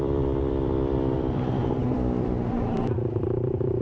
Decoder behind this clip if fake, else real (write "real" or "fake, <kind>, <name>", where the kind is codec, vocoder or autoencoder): fake, vocoder, BigVGAN v2